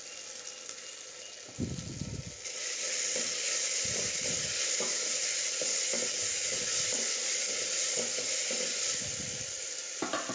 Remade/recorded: recorded